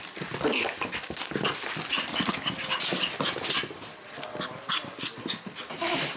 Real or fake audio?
real